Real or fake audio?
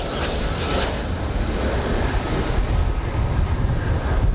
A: real